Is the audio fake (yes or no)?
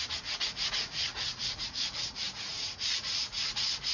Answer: yes